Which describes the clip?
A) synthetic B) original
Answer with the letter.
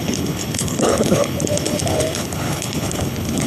A